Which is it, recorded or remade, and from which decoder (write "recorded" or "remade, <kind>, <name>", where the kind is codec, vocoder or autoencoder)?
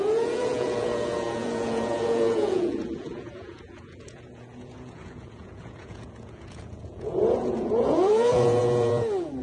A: remade, vocoder, Vocos